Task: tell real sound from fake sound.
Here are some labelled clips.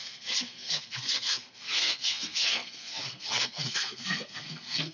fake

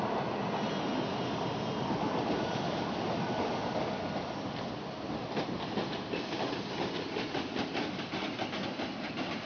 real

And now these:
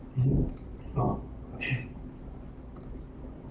real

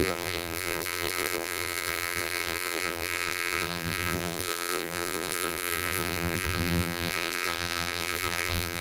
fake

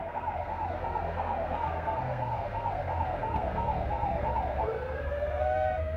fake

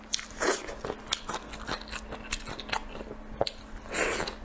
real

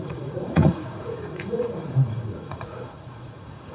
fake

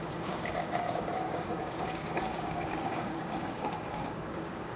fake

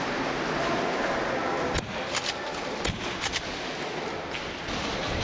real